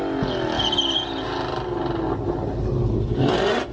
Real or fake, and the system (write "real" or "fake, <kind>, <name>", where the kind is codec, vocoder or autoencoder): real